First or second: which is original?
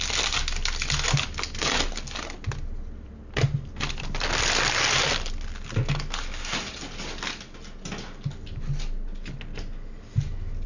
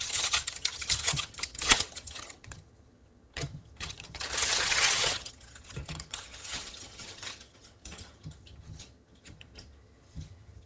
first